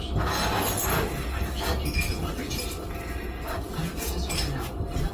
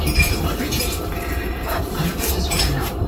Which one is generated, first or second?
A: second